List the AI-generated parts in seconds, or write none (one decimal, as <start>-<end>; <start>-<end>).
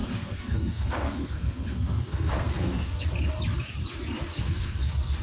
0.0-3.1; 4.3-5.2